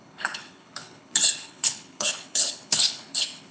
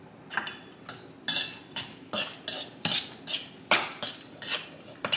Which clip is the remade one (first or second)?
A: first